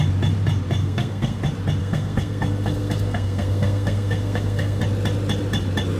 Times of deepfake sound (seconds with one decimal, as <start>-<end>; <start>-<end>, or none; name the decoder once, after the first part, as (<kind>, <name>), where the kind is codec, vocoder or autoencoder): 0.8-1.4 (codec, SNAC); 1.8-4.8